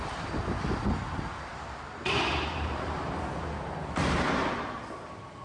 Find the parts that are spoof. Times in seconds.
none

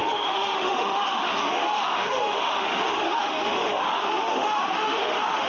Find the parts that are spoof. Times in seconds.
0.0-5.5 (autoencoder, DAC-VAE)

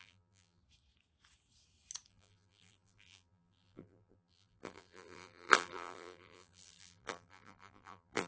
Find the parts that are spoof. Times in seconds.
0.0-0.6 (vocoder, BigVGAN v2); 2.1-8.3

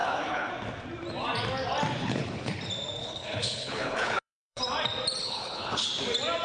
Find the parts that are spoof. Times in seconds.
0.0-0.5 (codec, HILCodec); 2.0-2.6; 3.0-4.6; 5.2-5.9